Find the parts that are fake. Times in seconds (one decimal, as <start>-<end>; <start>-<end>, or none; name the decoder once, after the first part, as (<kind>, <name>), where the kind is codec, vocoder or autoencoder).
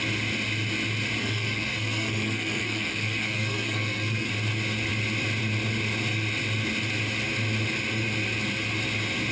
1.2-4.3 (codec, SNAC)